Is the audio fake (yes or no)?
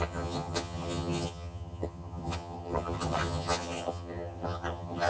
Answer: yes